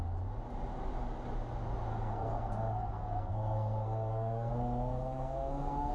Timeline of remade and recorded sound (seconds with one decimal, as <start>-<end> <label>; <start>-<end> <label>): 0.0-1.9 recorded; 1.9-4.5 remade; 4.5-4.9 recorded; 4.9-5.9 remade